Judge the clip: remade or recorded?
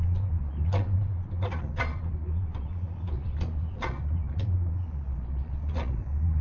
remade